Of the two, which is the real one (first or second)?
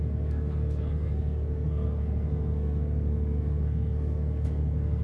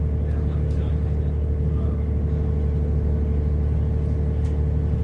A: second